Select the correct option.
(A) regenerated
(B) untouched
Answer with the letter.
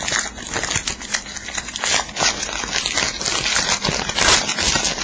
B